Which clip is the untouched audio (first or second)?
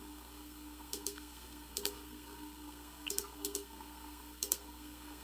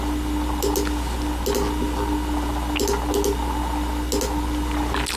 second